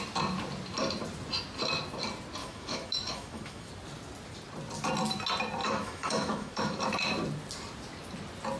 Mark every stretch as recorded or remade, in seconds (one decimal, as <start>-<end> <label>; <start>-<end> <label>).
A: 0.0-2.4 recorded; 2.4-3.7 remade; 3.7-5.6 recorded; 5.6-6.8 remade; 6.8-8.6 recorded